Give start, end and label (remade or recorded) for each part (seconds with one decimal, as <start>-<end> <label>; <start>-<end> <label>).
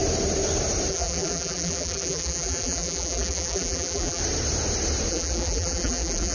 0.0-0.9 recorded; 0.9-4.2 remade; 4.2-5.1 recorded; 5.1-6.3 remade